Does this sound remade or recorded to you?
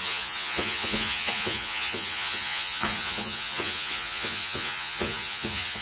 remade